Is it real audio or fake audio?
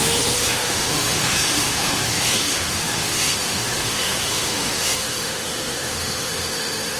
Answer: fake